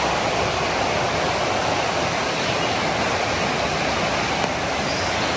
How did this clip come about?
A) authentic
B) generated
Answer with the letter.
A